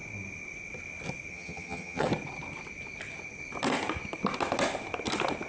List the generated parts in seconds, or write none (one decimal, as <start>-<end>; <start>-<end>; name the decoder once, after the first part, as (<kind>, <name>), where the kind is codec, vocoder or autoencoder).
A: 1.3-2.1 (vocoder, HiFi-GAN)